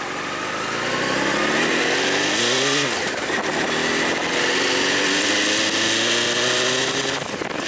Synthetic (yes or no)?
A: no